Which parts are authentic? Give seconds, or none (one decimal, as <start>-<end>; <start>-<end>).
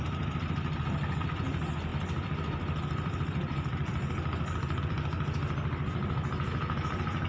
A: 0.0-1.9; 4.8-7.3